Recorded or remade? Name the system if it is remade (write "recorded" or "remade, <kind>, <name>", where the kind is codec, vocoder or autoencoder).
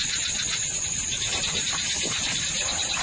recorded